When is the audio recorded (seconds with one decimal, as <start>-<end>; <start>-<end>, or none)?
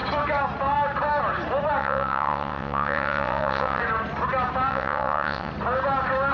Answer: 0.0-1.8; 3.8-4.7; 5.5-6.3